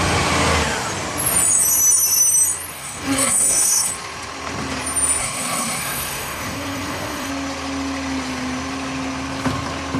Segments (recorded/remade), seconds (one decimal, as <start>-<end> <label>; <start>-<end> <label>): 0.0-2.7 recorded; 2.7-3.9 remade; 3.9-5.2 recorded; 5.2-7.3 remade; 7.3-10.0 recorded